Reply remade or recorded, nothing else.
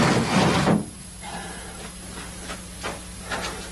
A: recorded